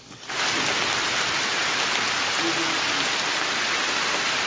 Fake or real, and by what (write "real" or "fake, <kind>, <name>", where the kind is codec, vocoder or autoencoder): real